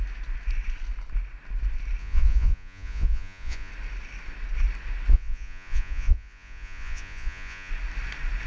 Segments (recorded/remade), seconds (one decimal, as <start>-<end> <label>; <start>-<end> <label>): 0.0-2.0 recorded; 2.0-3.7 remade; 3.7-5.1 recorded; 5.1-7.7 remade; 7.7-8.5 recorded